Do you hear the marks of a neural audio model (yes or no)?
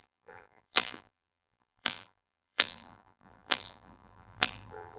yes